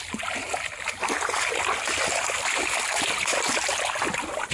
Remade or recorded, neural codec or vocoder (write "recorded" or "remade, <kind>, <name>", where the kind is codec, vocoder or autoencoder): recorded